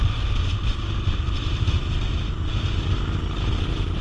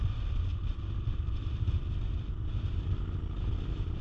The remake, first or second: second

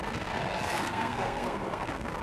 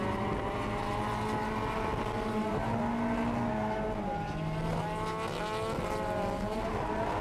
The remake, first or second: first